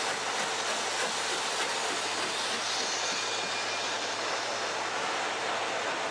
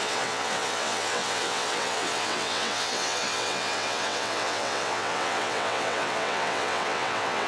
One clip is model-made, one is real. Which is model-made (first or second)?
second